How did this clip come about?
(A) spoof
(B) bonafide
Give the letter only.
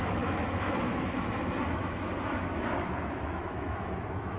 A